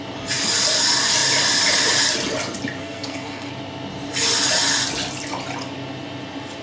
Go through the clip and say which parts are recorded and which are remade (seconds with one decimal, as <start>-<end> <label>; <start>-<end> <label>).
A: 0.0-2.8 recorded; 2.8-3.5 remade; 3.5-6.6 recorded